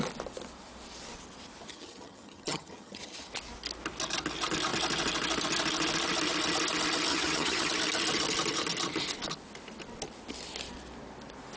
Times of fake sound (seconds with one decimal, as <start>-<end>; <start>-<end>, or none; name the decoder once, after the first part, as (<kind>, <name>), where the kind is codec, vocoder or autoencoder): 1.7-3.3 (vocoder, HiFi-GAN); 7.1-7.7